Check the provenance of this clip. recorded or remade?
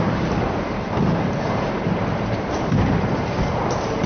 remade